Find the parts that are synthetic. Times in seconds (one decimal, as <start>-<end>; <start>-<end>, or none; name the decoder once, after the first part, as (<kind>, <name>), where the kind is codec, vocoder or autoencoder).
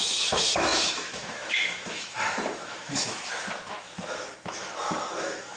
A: 0.0-5.6 (autoencoder, DAC-VAE)